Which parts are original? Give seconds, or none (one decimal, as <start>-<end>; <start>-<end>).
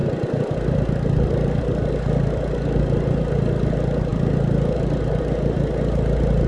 0.0-6.5